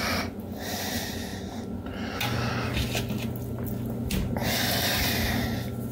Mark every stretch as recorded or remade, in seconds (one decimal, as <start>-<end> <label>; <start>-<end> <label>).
0.0-5.9 recorded